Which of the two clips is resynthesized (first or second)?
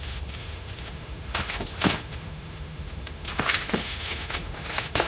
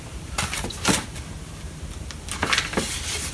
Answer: first